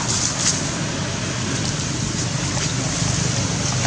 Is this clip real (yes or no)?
yes